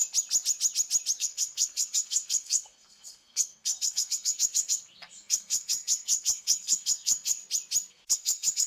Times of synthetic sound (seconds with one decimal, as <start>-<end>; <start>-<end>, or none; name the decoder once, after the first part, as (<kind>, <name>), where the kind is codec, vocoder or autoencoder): 1.2-7.4 (codec, SNAC); 7.9-8.7